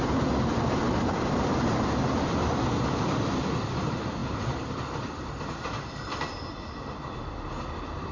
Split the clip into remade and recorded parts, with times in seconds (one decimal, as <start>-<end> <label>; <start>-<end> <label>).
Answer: 0.0-8.1 remade